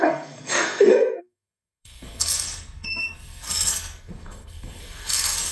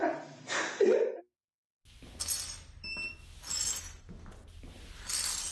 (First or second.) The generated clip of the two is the first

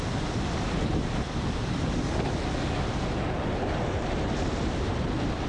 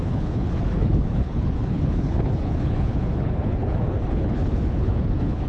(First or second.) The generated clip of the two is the second